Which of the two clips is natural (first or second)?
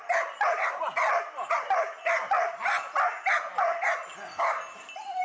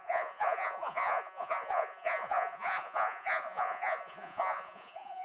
first